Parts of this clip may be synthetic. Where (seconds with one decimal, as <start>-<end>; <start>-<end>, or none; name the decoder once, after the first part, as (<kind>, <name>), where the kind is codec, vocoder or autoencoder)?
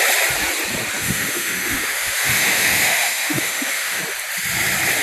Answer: 1.0-4.0 (autoencoder, DAC-VAE)